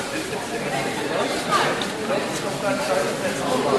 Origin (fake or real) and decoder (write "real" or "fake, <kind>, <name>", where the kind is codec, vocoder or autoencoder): real